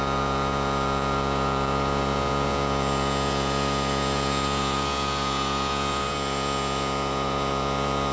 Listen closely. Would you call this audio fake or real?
fake